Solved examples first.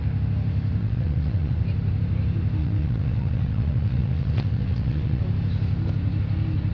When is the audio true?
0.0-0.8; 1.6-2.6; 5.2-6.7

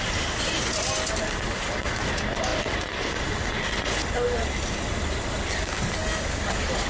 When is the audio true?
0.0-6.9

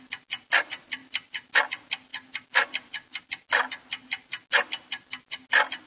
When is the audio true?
0.0-5.9

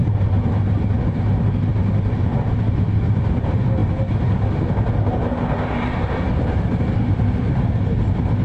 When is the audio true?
0.0-1.7; 2.6-8.4